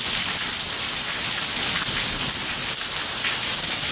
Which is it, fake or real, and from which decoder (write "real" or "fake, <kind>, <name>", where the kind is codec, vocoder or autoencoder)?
real